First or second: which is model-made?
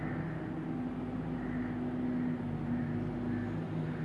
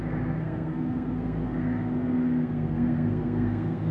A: second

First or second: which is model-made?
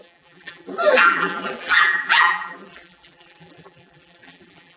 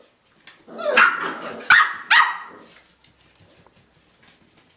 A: first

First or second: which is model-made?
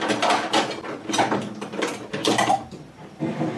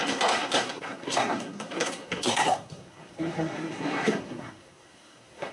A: second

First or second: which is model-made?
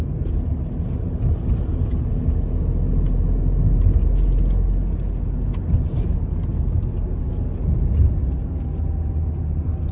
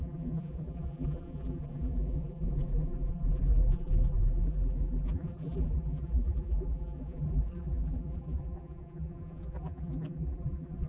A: second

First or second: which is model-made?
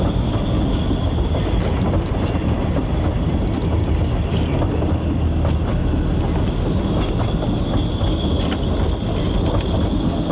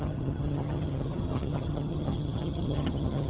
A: second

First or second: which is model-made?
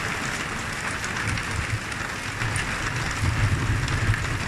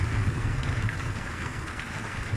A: second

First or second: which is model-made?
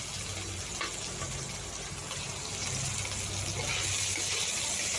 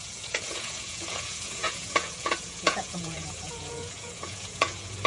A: second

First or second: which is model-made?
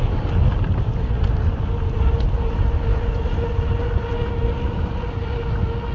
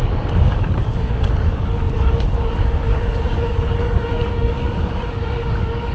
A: second